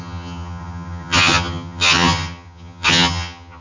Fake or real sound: fake